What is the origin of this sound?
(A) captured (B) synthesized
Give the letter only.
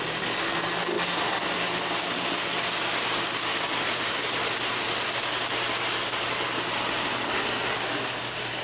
A